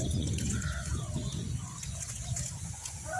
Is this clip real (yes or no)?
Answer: no